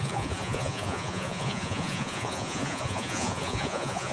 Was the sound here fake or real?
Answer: fake